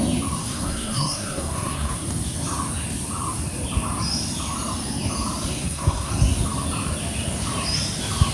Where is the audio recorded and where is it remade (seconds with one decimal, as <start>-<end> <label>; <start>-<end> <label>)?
0.0-0.4 recorded; 0.4-1.9 remade; 1.9-5.6 recorded; 5.6-6.1 remade; 6.1-8.3 recorded